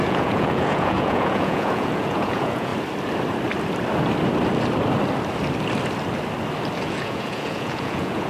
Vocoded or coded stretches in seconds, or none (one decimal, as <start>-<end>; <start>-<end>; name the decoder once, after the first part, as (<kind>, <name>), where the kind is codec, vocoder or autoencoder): 0.0-2.7 (vocoder, Vocos); 6.9-8.3